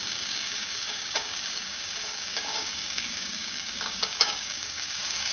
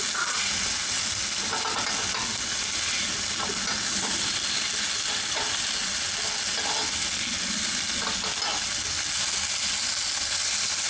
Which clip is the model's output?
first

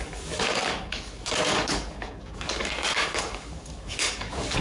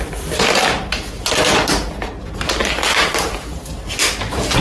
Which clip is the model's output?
first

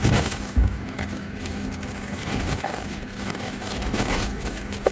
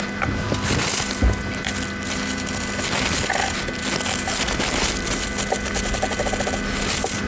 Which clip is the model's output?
first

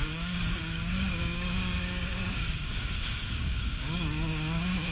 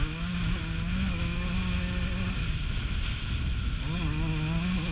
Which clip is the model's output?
first